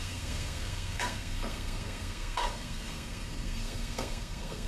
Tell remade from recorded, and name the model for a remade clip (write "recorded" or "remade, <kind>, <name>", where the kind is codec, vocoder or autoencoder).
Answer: remade, codec, SNAC